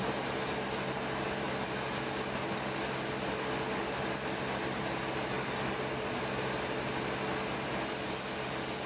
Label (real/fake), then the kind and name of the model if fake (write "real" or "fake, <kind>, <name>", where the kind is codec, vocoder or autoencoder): real